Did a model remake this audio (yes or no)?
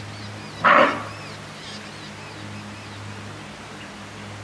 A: no